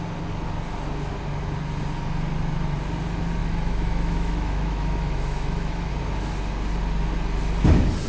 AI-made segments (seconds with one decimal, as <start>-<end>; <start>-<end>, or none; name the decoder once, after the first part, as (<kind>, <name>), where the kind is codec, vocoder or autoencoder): 3.4-5.9 (autoencoder, DAC-VAE)